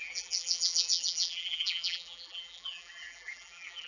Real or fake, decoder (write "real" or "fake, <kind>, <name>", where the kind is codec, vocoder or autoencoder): fake, vocoder, BigVGAN v2